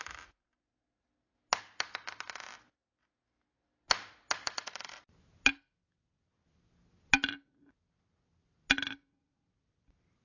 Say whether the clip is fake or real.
real